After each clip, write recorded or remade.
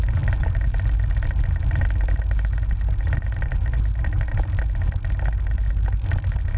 recorded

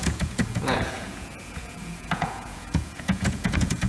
remade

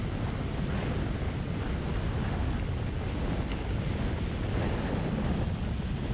recorded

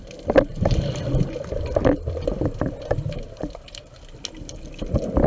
recorded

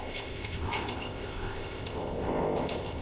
remade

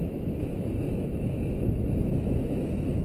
remade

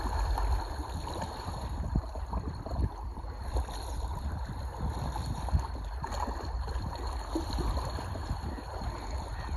remade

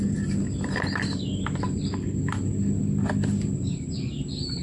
recorded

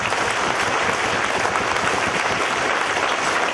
recorded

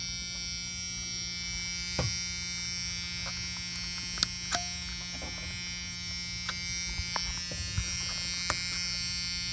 recorded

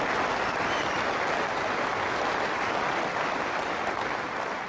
recorded